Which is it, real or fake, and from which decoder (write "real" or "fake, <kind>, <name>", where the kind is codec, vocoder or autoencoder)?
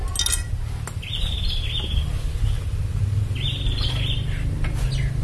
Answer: real